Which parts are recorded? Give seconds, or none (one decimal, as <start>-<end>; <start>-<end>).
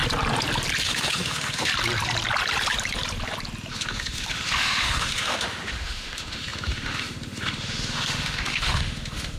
0.0-0.8; 1.7-3.7